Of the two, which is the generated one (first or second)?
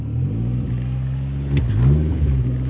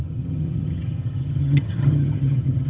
second